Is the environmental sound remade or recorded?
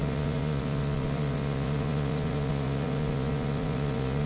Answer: remade